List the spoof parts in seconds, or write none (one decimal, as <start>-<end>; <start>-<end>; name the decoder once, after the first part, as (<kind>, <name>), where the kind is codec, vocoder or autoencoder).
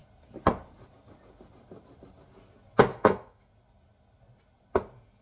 2.9-3.5 (autoencoder, DAC-VAE)